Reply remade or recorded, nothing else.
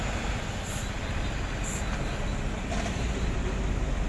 recorded